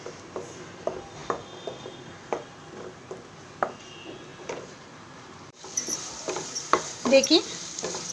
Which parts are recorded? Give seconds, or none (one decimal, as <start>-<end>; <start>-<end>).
0.0-4.3